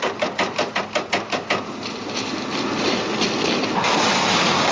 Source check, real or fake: real